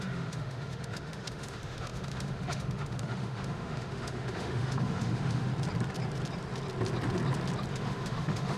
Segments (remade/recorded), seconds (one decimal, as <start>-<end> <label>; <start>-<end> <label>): 0.0-5.5 remade; 5.5-7.7 recorded; 7.7-8.6 remade